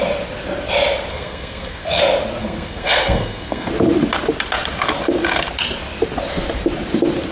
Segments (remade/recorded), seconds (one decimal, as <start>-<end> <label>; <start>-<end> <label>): 0.0-1.1 recorded; 1.1-2.0 remade; 2.0-2.4 recorded; 2.4-3.7 remade; 3.7-7.3 recorded